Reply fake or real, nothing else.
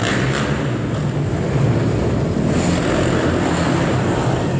real